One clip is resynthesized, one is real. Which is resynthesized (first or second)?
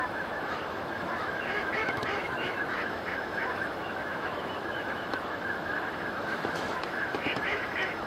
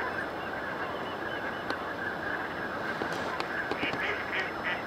first